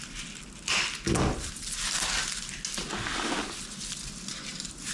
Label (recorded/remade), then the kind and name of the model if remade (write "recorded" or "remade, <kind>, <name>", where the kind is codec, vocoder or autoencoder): recorded